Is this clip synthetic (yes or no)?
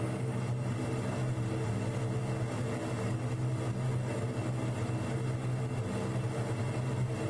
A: no